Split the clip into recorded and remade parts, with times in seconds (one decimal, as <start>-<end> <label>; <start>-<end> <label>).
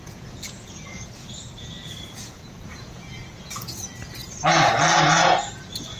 0.0-4.2 remade; 4.2-5.0 recorded; 5.0-6.0 remade